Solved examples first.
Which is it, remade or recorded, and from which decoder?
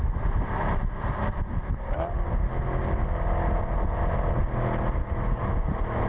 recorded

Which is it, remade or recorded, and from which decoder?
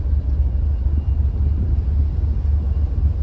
recorded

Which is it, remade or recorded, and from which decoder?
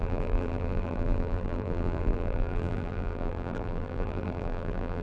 remade, vocoder, BigVGAN v2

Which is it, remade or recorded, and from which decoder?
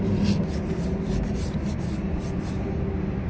recorded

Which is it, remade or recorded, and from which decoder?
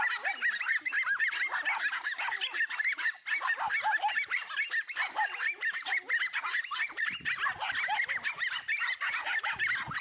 recorded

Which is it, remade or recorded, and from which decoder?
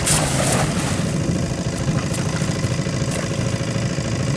recorded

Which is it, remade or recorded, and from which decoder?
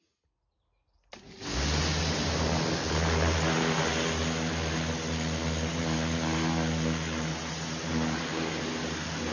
recorded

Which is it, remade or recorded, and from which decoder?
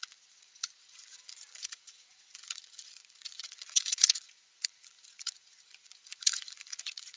remade, vocoder, Vocos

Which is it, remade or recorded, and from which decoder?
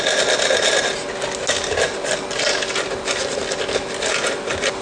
recorded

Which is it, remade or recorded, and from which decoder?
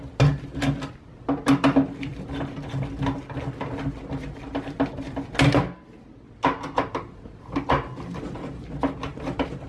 recorded